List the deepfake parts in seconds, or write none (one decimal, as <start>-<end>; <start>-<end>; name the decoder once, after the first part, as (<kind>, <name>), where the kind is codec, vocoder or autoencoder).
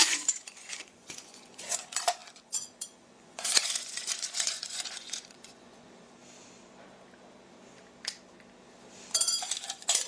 0.0-6.2 (vocoder, Vocos); 9.6-10.1